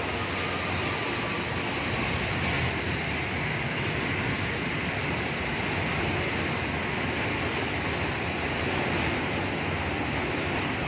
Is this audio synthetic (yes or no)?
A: no